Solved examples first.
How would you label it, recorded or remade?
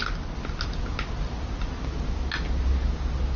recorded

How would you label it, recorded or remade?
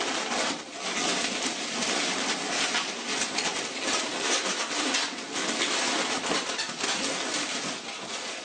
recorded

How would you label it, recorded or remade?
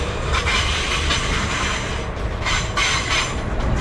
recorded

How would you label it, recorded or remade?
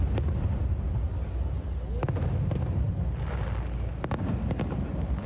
recorded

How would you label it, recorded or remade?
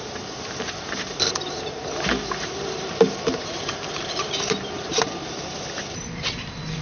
remade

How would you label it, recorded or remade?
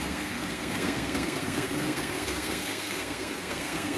remade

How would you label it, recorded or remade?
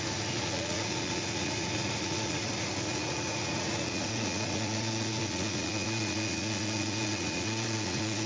remade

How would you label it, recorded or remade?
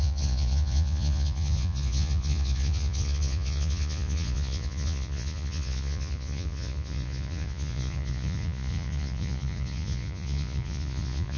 remade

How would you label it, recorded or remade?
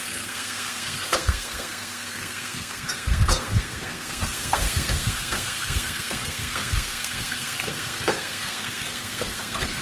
remade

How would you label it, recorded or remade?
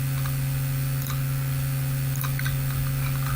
recorded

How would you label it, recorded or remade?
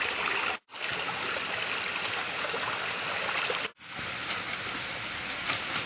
recorded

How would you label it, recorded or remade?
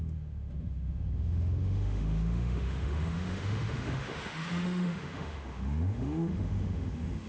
remade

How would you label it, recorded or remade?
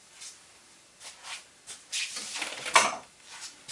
recorded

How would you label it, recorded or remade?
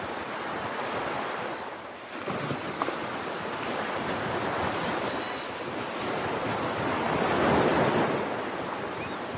recorded